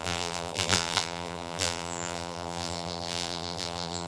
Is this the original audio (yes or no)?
no